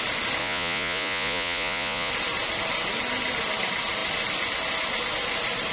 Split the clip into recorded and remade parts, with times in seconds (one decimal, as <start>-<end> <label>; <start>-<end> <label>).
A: 0.0-0.4 recorded; 0.4-2.1 remade; 2.1-5.7 recorded